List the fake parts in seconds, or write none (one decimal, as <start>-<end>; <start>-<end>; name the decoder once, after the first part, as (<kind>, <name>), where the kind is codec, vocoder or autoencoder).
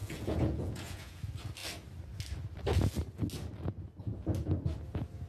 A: 0.0-1.2 (vocoder, Vocos)